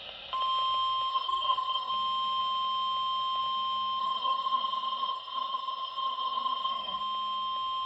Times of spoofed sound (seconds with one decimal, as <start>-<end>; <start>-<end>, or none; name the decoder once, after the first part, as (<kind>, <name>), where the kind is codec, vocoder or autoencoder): 1.1-1.9 (codec, SNAC); 4.0-7.0